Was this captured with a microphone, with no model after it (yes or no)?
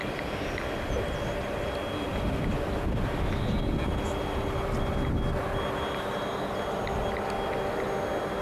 yes